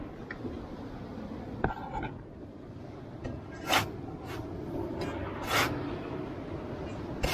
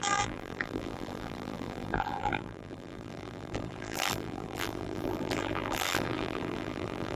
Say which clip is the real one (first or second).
first